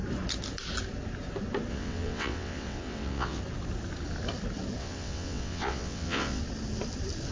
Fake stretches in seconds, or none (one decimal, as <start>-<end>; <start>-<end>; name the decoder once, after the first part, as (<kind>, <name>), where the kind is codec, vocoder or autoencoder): 1.7-3.4 (vocoder, WaveNeXt); 4.8-6.4